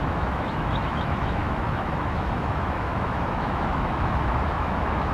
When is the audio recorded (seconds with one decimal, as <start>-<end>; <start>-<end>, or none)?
none

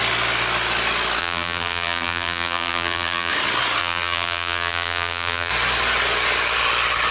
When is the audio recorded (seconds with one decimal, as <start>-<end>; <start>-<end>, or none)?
0.0-1.2; 3.3-3.8; 5.5-7.1

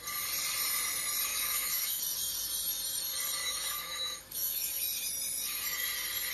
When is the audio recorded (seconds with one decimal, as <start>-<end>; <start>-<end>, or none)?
0.0-1.3; 2.0-3.4; 4.8-6.3

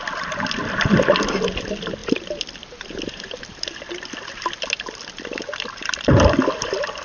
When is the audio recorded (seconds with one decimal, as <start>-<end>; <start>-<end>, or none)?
0.0-7.0

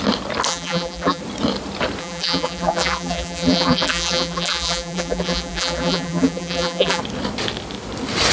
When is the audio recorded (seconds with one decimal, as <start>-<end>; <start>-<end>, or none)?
0.0-0.5; 1.2-2.0; 7.0-8.3

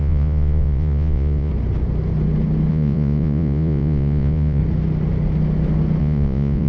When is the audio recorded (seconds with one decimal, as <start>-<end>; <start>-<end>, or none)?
1.5-2.7; 4.6-6.0